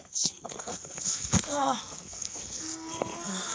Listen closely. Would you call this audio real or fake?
fake